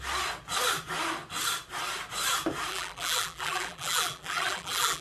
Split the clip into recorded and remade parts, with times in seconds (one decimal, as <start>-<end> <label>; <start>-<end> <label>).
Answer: 0.0-2.7 recorded; 2.7-5.0 remade

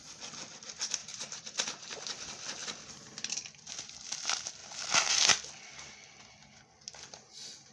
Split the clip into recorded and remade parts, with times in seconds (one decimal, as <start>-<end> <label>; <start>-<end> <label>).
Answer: 0.0-1.0 recorded; 1.0-2.0 remade; 2.0-4.6 recorded; 4.6-5.1 remade; 5.1-7.7 recorded

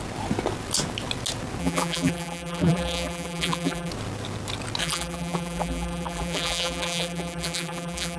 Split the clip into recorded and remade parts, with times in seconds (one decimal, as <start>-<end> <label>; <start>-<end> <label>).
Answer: 0.0-1.6 recorded; 1.6-3.9 remade; 3.9-4.8 recorded; 4.8-8.2 remade

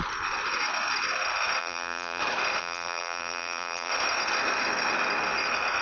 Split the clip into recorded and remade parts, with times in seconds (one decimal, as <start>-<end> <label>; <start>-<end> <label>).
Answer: 0.0-1.6 recorded; 1.6-2.2 remade; 2.2-2.6 recorded; 2.6-3.9 remade; 3.9-5.8 recorded